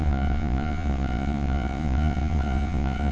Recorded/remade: remade